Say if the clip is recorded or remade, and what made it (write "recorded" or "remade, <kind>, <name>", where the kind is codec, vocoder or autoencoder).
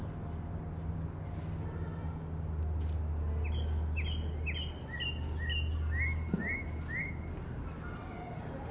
recorded